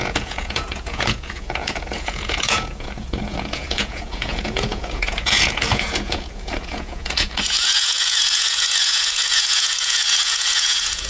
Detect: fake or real fake